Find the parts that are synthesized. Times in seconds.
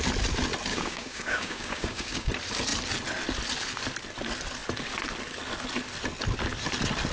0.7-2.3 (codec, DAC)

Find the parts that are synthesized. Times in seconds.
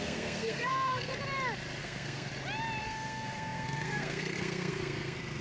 0.0-1.1 (codec, SNAC); 1.8-2.3; 2.8-5.4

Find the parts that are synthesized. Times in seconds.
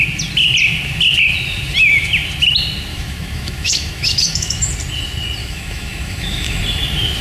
2.9-4.7 (autoencoder, DAC-VAE); 5.4-6.6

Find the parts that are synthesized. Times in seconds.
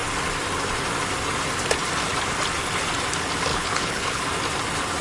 3.5-4.2 (codec, HILCodec)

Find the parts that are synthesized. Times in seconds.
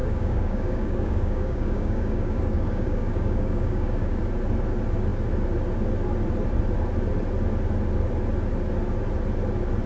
0.0-4.2 (codec, DAC)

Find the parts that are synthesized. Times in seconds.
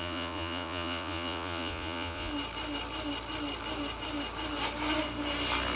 0.0-2.3 (vocoder, Vocos)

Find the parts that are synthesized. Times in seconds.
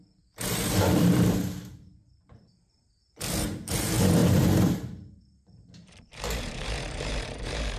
0.0-7.8 (vocoder, BigVGAN v2)